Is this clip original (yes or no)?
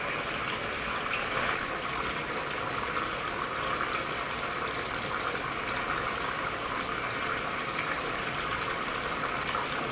no